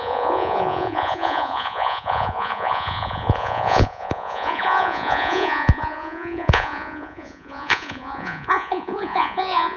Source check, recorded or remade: remade